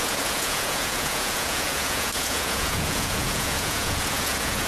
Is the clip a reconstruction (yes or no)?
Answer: yes